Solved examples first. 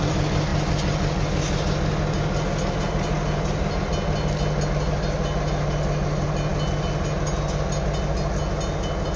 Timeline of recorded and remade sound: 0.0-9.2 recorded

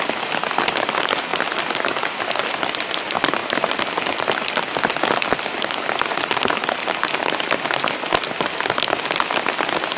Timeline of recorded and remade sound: 0.0-1.3 recorded; 1.3-2.8 remade; 2.8-10.0 recorded

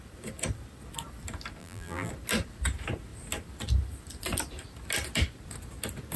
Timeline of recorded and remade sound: 0.0-1.6 recorded; 1.6-2.1 remade; 2.1-6.2 recorded

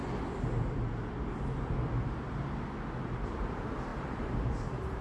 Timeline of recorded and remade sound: 0.0-3.0 recorded; 3.0-5.0 remade

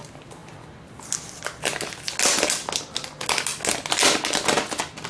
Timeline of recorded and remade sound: 0.0-5.1 recorded

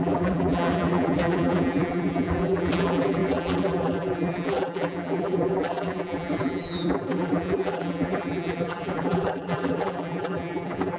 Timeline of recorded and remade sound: 0.0-11.0 remade

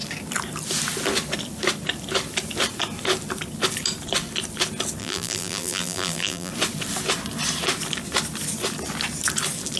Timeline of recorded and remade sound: 0.0-5.0 recorded; 5.0-6.5 remade; 6.5-9.8 recorded